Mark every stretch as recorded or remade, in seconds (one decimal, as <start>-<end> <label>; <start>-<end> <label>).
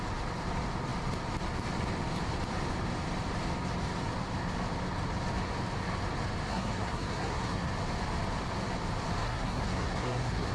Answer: 0.0-6.5 recorded; 6.5-7.7 remade; 7.7-9.2 recorded; 9.2-10.5 remade